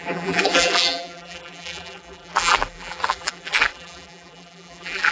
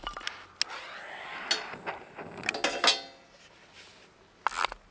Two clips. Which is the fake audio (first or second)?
first